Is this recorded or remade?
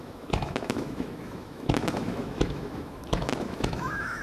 remade